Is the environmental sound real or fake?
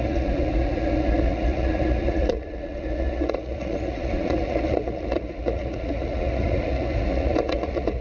fake